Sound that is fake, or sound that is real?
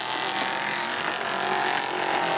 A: real